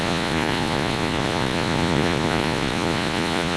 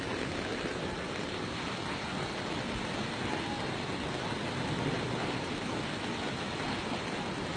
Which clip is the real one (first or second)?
second